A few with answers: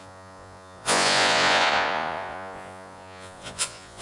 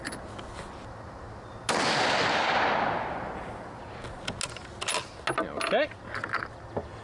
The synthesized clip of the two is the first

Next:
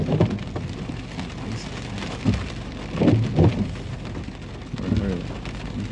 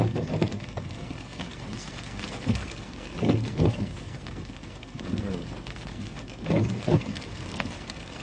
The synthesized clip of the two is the second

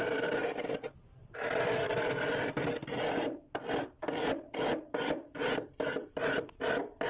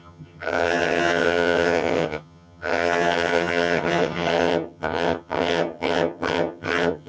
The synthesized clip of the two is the second